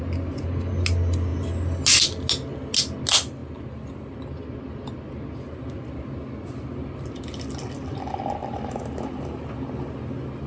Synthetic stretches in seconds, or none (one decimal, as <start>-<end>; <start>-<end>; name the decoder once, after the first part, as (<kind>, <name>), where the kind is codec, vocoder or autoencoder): 8.4-9.5 (vocoder, BigVGAN v2)